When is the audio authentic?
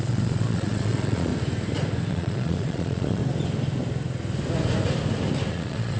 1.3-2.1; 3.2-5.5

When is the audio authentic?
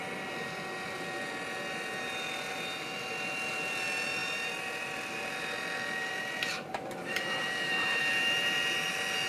0.0-4.2; 5.2-6.0; 8.0-9.3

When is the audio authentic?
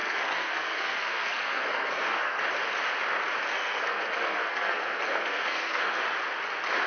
2.4-3.5; 6.0-6.9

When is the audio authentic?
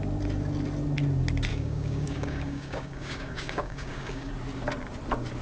0.0-1.5; 4.3-5.4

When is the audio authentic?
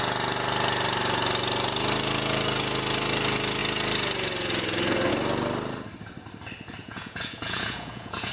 0.0-6.8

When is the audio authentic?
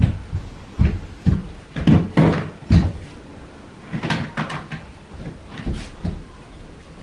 0.0-7.0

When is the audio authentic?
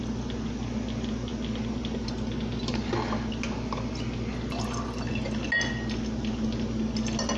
0.0-7.4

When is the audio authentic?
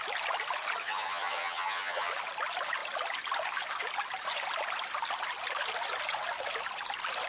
0.0-0.8; 2.1-7.3